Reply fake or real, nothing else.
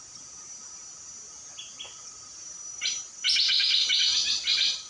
real